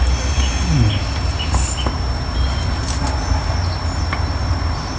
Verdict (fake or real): real